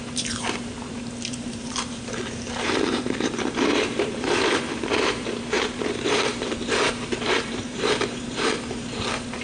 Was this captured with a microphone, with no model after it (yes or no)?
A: no